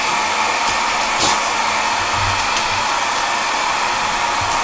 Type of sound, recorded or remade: recorded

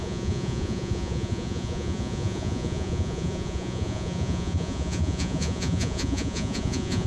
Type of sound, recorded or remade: remade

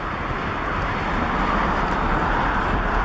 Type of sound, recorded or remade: recorded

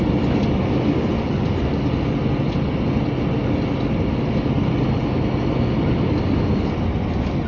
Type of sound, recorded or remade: recorded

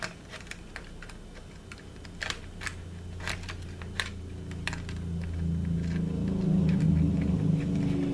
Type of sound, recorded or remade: recorded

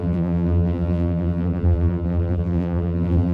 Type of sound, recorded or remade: remade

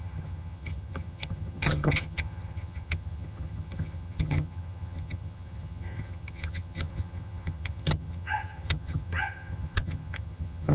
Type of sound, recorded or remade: remade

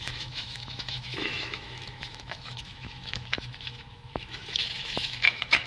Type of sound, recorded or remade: remade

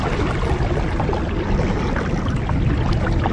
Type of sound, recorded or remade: recorded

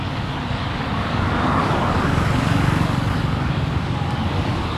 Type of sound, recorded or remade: remade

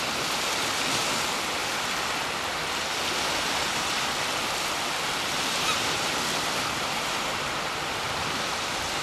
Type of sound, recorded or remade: remade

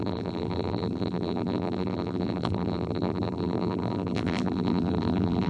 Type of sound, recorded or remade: remade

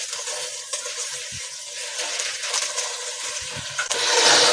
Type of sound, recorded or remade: remade